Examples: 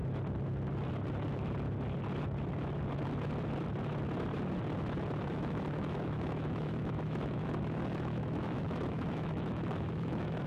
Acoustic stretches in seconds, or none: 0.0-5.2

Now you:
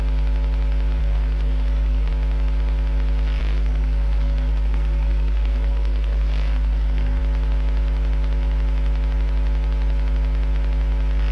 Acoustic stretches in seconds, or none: 0.0-1.0; 2.1-3.4; 7.2-11.3